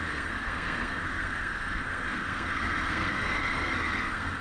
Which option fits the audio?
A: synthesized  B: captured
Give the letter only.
A